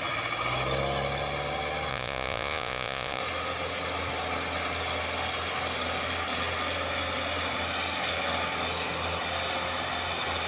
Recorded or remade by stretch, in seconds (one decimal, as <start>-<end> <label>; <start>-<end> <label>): 0.0-1.9 recorded; 1.9-3.2 remade; 3.2-10.5 recorded